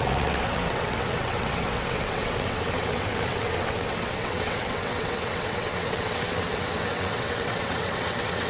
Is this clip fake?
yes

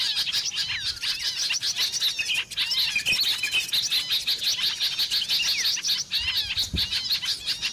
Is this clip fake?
no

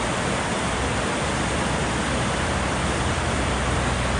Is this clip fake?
no